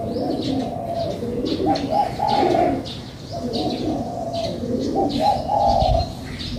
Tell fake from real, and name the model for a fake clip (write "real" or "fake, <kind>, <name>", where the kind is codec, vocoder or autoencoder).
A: real